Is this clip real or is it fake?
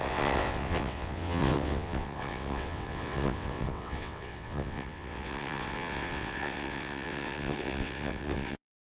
fake